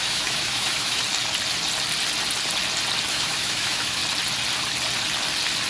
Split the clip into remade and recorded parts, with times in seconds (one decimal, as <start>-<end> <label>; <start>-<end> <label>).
0.0-1.0 remade; 1.0-3.1 recorded; 3.1-4.0 remade; 4.0-5.7 recorded